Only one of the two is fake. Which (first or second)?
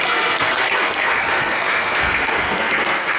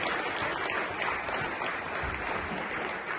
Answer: first